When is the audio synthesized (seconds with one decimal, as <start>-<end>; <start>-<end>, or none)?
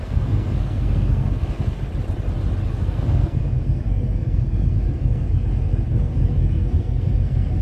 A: 0.0-1.9; 2.7-7.6